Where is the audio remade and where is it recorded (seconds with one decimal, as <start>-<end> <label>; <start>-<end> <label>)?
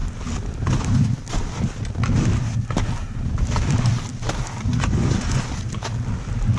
0.0-4.7 recorded; 4.7-5.4 remade; 5.4-6.6 recorded